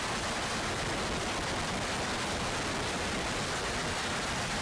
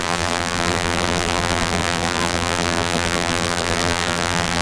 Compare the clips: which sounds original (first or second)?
first